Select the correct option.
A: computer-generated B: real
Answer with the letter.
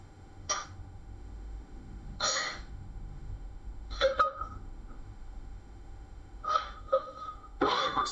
A